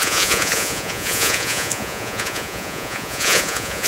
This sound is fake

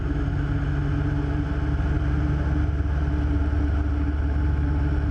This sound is real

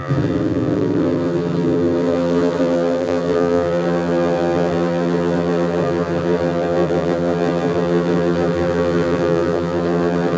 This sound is fake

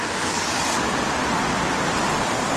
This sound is fake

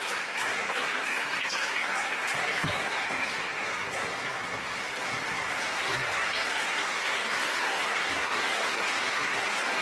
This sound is fake